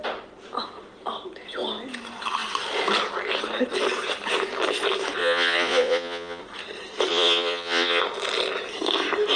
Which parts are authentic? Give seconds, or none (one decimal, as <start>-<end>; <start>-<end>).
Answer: 0.0-5.2; 6.4-7.1; 8.0-9.4